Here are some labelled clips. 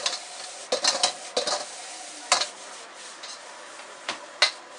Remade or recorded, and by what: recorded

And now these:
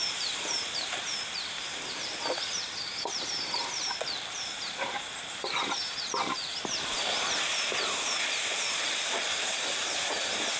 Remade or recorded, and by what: remade, vocoder, BigVGAN v2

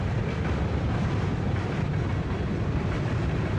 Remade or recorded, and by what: remade, vocoder, BigVGAN v2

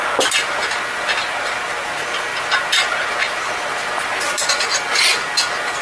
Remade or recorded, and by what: recorded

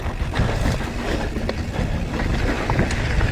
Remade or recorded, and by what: recorded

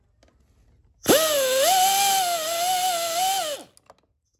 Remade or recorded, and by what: recorded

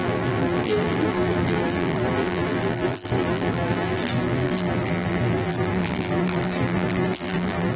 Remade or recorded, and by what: remade, vocoder, BigVGAN v2